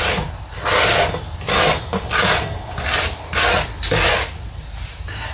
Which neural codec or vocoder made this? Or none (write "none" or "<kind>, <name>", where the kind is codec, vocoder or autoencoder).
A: none